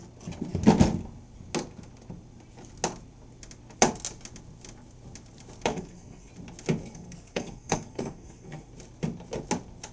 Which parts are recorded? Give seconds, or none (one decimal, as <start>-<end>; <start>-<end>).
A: 0.0-5.7; 6.3-6.8; 8.7-9.9

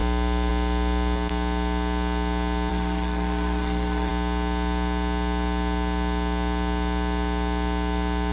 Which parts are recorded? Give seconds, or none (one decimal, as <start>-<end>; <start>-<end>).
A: 0.0-2.7; 4.1-8.3